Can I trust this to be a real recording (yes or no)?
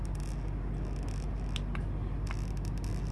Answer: yes